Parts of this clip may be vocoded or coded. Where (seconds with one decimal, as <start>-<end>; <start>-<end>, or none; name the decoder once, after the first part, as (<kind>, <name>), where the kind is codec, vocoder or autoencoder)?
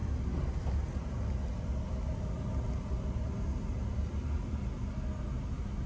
none